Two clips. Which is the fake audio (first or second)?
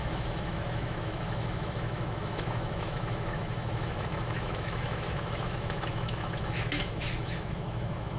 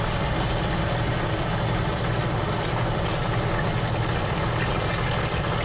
first